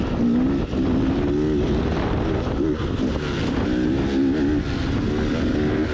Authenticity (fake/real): real